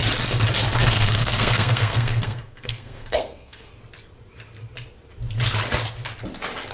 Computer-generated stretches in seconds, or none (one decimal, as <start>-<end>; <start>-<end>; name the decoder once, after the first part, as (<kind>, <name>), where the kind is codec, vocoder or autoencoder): 0.8-3.7 (codec, SNAC)